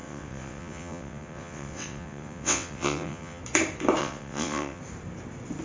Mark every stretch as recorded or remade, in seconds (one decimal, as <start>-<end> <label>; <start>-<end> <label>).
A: 0.0-3.4 remade; 3.4-4.0 recorded; 4.0-4.8 remade; 4.8-5.6 recorded